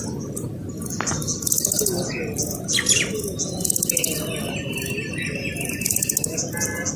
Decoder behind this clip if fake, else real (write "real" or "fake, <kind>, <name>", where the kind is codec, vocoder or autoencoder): real